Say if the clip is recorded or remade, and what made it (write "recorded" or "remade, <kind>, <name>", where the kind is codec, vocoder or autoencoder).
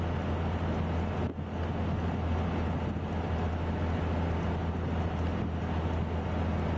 recorded